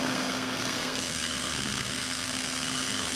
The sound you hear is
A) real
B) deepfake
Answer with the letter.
B